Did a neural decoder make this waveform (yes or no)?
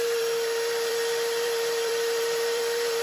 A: yes